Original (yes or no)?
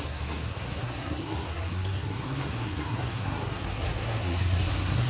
no